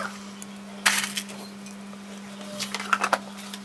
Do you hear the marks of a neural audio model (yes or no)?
no